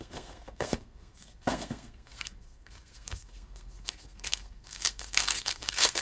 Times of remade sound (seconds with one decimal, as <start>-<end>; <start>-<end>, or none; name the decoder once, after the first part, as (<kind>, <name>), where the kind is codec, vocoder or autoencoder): 0.0-6.0 (codec, SNAC)